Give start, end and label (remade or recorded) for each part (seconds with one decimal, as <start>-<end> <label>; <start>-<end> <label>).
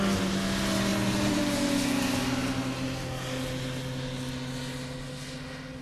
0.0-0.9 recorded; 0.9-1.7 remade; 1.7-5.8 recorded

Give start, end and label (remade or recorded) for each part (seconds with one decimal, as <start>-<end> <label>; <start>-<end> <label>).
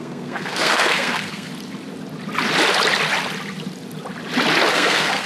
0.0-1.5 remade; 1.5-4.7 recorded; 4.7-5.3 remade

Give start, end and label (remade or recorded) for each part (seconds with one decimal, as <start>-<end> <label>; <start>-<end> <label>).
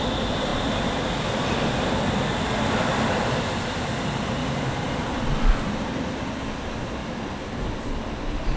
0.0-8.6 recorded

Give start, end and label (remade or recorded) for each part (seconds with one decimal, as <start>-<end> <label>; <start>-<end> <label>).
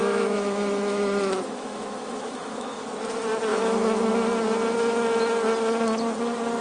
0.0-2.9 remade; 2.9-3.5 recorded; 3.5-4.1 remade; 4.1-6.6 recorded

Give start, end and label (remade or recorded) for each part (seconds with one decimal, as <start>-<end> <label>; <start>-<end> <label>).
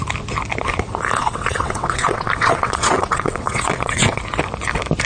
0.0-1.2 recorded; 1.2-4.2 remade; 4.2-5.0 recorded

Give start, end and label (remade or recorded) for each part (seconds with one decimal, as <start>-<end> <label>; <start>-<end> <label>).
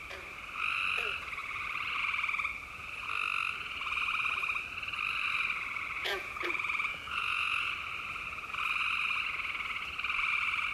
0.0-6.0 recorded; 6.0-7.7 remade; 7.7-10.7 recorded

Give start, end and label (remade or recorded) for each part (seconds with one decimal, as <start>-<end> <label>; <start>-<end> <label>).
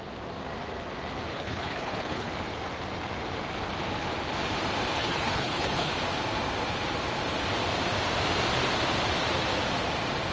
0.0-1.3 recorded; 1.3-2.3 remade; 2.3-5.0 recorded; 5.0-5.9 remade; 5.9-10.3 recorded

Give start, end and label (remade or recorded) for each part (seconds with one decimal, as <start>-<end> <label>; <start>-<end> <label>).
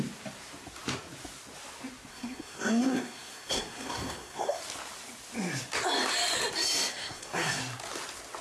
0.0-2.1 recorded; 2.1-4.6 remade; 4.6-6.9 recorded; 6.9-7.6 remade; 7.6-8.4 recorded